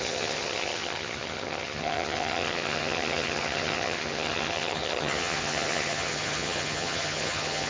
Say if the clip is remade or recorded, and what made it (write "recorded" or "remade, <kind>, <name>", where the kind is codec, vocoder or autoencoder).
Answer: remade, vocoder, HiFi-GAN